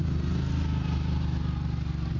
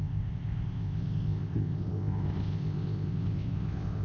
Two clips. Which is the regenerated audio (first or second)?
second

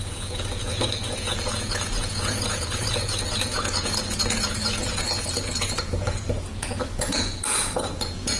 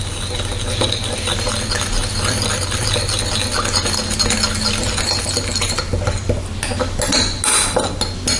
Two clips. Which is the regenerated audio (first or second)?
first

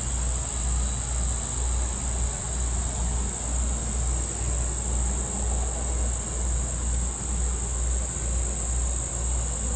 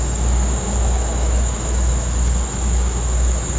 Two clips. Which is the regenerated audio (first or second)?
second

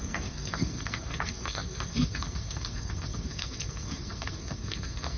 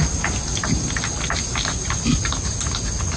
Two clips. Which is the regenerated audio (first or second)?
first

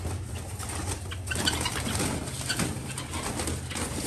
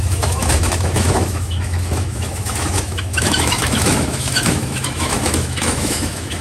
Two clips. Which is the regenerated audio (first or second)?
second